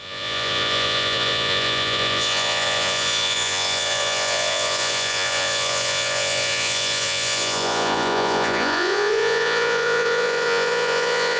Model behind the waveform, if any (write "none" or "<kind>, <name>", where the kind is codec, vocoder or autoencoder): vocoder, Vocos